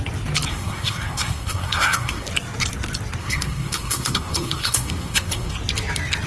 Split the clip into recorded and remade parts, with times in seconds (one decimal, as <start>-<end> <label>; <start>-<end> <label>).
0.0-0.5 recorded; 0.5-2.3 remade; 2.3-3.2 recorded; 3.2-5.5 remade; 5.5-6.3 recorded